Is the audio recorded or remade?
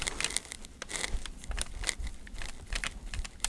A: recorded